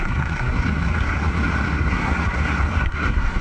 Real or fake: fake